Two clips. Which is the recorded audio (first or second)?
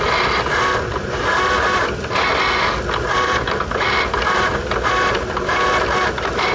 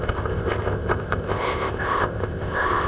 first